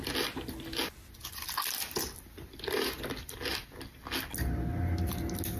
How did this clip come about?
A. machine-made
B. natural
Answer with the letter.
B